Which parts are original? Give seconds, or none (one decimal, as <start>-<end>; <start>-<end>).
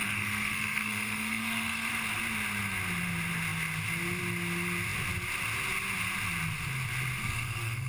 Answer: 1.9-7.2